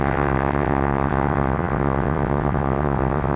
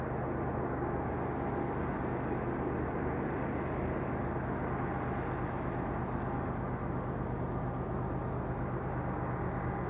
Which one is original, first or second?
second